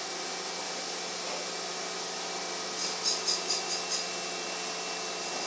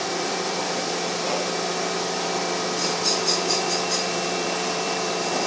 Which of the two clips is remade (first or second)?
second